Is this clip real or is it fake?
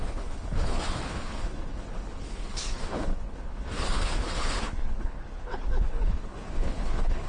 fake